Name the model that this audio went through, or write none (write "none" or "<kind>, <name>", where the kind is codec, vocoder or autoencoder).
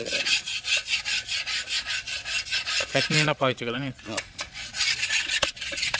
vocoder, Vocos